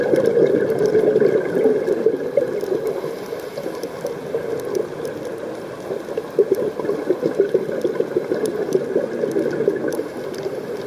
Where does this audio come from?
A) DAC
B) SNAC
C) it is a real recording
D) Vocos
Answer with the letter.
C